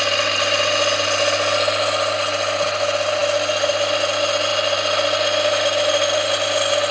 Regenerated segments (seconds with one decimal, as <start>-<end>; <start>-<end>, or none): none